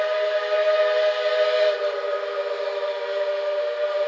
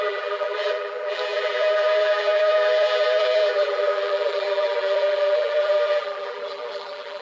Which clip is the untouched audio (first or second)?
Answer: first